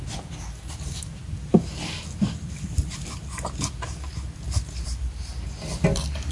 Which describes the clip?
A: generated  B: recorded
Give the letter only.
B